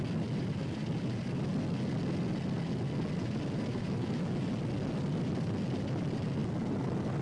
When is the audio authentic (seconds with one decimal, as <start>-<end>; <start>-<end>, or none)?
0.0-3.7; 4.5-7.2